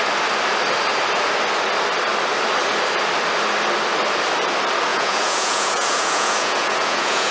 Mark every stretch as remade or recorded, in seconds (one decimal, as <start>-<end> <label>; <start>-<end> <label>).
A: 0.0-4.9 recorded; 4.9-7.3 remade